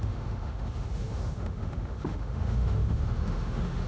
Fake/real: fake